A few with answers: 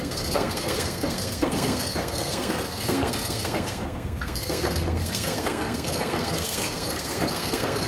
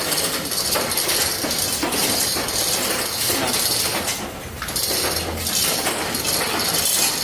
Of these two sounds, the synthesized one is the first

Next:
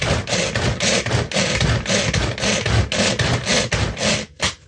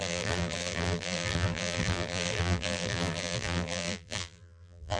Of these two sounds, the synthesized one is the second